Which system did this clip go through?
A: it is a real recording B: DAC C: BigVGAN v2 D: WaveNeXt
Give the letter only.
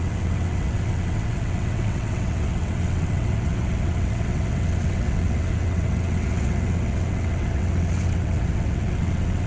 D